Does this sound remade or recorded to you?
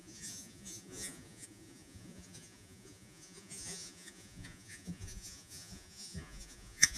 remade